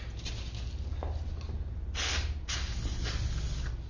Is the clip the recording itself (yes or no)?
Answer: yes